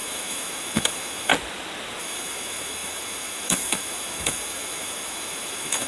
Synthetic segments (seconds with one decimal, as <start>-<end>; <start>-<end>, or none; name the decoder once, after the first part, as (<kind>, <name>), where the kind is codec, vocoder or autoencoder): 0.0-1.3 (autoencoder, DAC-VAE); 2.0-5.9

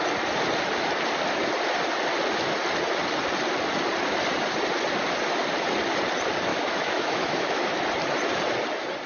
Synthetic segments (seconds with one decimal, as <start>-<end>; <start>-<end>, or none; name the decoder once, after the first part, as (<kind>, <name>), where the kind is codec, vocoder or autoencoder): 6.5-7.7 (autoencoder, DAC-VAE)

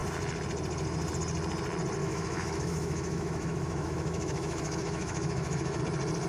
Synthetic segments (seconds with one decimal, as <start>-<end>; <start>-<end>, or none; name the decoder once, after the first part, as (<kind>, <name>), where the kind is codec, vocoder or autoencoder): 2.0-5.8 (autoencoder, DAC-VAE)

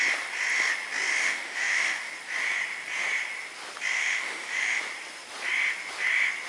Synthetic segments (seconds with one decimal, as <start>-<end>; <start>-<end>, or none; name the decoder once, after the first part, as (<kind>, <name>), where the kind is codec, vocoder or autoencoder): 1.1-2.1 (autoencoder, DAC-VAE); 3.9-4.8

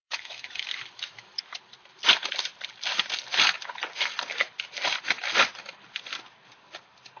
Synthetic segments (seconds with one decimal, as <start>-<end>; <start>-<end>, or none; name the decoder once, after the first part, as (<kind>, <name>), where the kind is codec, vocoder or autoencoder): 0.0-1.5 (autoencoder, DAC-VAE)

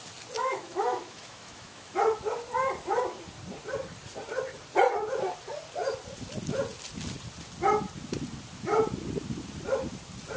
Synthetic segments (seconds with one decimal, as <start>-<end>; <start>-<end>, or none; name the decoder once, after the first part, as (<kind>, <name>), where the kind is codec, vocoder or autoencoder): 0.4-2.0 (autoencoder, DAC-VAE)

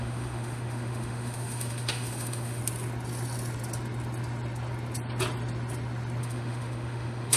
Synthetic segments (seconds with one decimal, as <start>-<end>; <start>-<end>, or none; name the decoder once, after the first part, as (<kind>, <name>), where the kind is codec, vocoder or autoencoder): 0.0-2.6 (autoencoder, DAC-VAE); 6.2-7.4